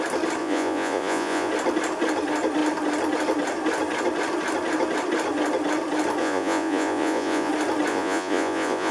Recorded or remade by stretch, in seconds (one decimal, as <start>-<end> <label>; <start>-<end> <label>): 0.0-0.4 recorded; 0.4-1.5 remade; 1.5-6.2 recorded; 6.2-7.5 remade; 7.5-7.9 recorded; 7.9-8.9 remade